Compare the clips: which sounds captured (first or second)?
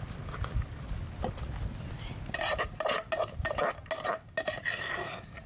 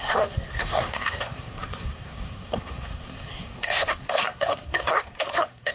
first